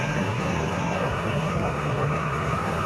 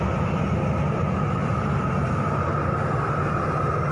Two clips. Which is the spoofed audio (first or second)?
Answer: first